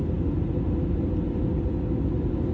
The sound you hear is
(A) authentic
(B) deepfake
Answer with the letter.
A